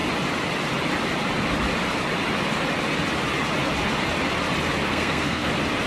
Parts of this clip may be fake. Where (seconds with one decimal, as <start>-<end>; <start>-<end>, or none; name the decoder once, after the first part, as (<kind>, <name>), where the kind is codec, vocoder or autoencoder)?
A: 4.9-5.5 (codec, SNAC)